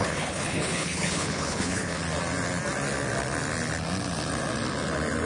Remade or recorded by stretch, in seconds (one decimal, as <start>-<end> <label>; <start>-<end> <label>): 0.0-2.0 remade; 2.0-5.3 recorded